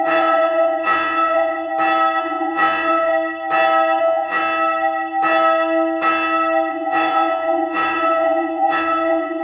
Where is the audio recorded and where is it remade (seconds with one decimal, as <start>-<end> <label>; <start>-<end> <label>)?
0.0-1.7 remade; 1.7-2.2 recorded; 2.2-3.1 remade; 3.1-4.0 recorded; 4.0-4.4 remade; 4.4-6.7 recorded; 6.7-9.4 remade